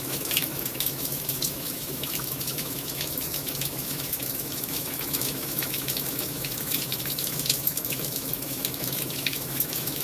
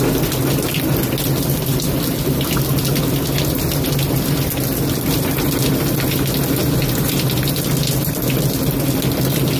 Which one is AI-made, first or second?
first